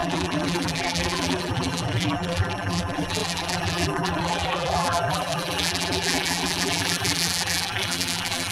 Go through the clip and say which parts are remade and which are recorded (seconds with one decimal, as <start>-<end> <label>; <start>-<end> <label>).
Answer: 0.0-8.5 remade